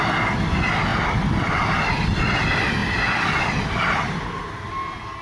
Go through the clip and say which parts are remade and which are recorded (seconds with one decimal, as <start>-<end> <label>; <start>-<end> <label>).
0.0-5.2 recorded